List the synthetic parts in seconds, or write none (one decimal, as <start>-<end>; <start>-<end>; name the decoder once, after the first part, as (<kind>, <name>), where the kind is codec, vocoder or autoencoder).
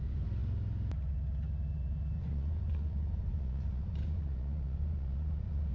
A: 2.2-5.7 (vocoder, Vocos)